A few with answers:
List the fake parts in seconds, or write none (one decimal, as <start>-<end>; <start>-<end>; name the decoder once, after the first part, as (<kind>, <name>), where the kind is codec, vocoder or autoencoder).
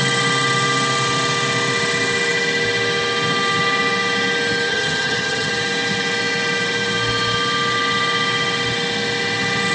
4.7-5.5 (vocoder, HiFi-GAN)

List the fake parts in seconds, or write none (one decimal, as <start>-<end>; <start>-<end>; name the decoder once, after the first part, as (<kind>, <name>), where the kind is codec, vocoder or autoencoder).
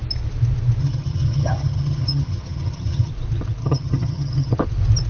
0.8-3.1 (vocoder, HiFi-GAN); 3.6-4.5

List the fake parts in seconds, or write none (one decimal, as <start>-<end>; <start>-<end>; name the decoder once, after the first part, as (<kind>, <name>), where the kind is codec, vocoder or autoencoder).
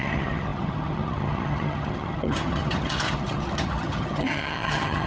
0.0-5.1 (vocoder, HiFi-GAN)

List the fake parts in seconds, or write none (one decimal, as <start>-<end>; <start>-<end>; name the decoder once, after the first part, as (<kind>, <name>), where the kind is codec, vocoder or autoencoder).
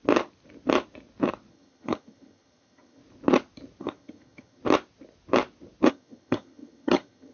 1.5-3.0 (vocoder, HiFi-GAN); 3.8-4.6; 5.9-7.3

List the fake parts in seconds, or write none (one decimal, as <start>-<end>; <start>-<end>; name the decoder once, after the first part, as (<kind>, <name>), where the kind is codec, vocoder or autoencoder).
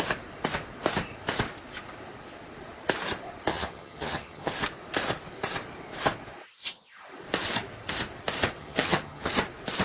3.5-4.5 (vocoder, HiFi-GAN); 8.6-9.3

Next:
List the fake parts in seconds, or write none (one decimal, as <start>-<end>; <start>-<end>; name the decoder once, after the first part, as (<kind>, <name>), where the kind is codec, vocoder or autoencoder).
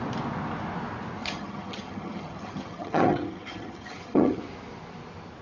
1.2-4.4 (vocoder, HiFi-GAN)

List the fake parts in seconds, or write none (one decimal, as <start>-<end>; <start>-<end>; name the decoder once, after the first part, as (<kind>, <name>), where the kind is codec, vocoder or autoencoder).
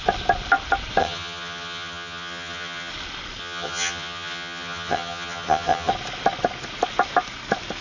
1.0-2.9 (vocoder, HiFi-GAN); 3.4-5.9